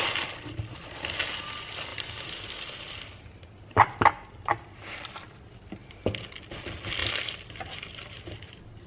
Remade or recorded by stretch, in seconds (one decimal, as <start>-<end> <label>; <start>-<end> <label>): 0.0-1.9 recorded; 1.9-5.2 remade; 5.2-5.8 recorded; 5.8-6.4 remade; 6.4-7.0 recorded; 7.0-8.9 remade